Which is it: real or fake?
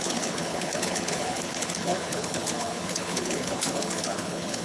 fake